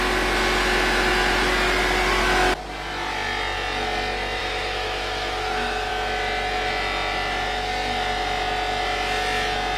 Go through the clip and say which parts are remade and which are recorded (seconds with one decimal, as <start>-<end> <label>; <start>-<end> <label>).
0.0-4.4 recorded; 4.4-5.9 remade; 5.9-9.8 recorded